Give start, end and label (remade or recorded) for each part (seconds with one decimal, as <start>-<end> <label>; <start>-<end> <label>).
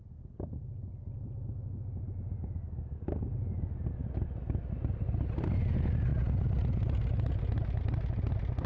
0.0-8.7 recorded